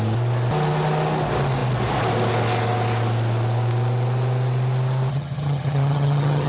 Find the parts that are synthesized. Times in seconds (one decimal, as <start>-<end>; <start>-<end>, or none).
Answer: 5.1-6.5